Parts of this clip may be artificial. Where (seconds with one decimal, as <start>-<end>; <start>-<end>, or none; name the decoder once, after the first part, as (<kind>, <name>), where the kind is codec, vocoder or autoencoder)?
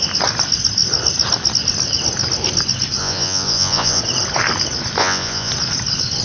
3.0-4.0 (vocoder, Vocos); 5.0-5.5